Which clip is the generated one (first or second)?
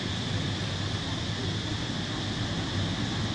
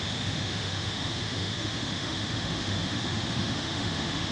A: second